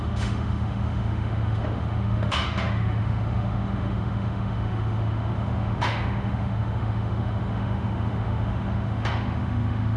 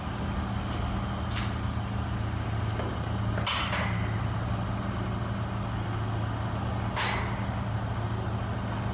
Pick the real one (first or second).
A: second